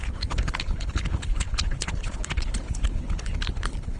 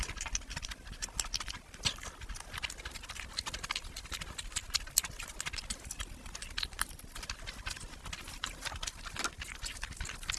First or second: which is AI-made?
first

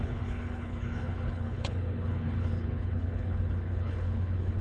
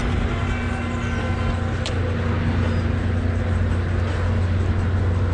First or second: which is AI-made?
first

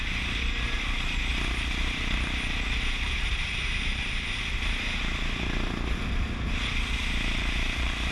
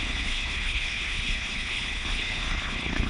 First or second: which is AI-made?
second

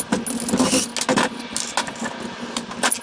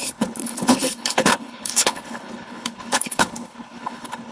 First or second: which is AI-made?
second